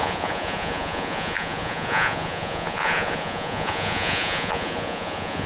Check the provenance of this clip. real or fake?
fake